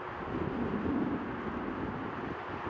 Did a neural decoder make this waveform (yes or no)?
no